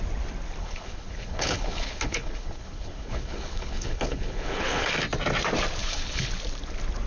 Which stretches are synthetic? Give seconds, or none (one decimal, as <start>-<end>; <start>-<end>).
0.6-4.9; 5.8-6.3